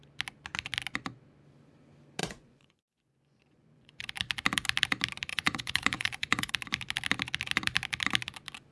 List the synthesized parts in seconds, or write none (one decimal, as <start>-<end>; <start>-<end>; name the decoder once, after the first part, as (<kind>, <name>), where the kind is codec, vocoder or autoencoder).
2.2-4.0 (vocoder, Vocos); 5.3-6.5